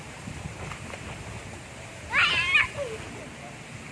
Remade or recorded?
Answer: recorded